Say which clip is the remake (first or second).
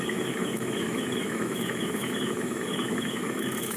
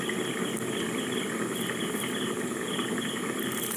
first